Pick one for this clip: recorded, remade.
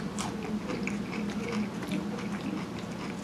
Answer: recorded